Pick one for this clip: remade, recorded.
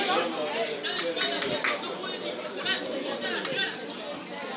recorded